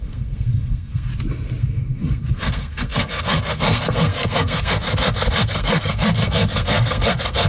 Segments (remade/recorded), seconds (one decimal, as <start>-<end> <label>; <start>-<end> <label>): 0.0-1.1 remade; 1.1-1.6 recorded; 1.6-7.5 remade